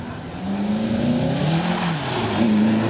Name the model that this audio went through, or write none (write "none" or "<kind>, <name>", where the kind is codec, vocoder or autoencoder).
none